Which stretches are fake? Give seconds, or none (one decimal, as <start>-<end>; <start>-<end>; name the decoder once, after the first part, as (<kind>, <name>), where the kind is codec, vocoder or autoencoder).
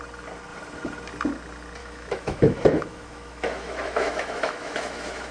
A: 1.8-5.3 (autoencoder, DAC-VAE)